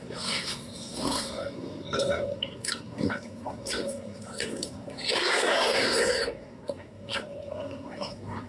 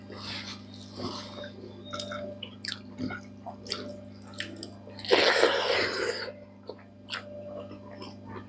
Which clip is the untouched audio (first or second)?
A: second